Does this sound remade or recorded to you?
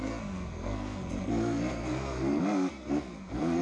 remade